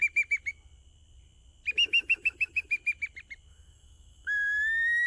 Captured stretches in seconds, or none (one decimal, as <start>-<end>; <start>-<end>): 0.0-1.9; 2.7-3.5